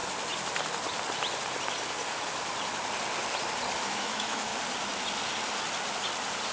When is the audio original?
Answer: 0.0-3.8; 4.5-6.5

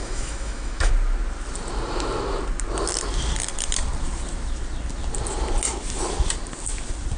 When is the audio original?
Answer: 0.9-7.2

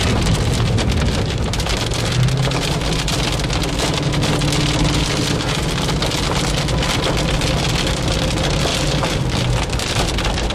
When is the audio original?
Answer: 0.0-10.5

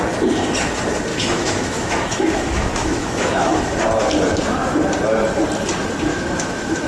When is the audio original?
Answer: 0.0-1.1; 3.6-6.1

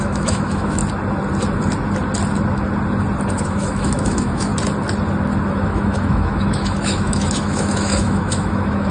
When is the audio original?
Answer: 0.8-3.3; 4.5-5.5

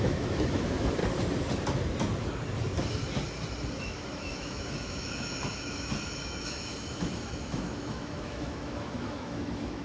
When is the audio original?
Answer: 1.0-3.8

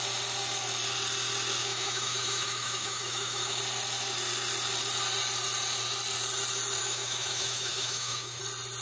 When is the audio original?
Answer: 0.0-1.6; 3.6-6.8; 8.4-8.8

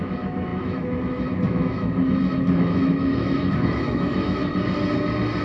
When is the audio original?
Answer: 4.4-5.4